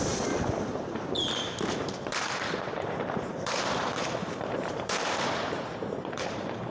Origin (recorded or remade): remade